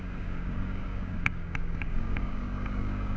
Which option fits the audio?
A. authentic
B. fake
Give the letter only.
B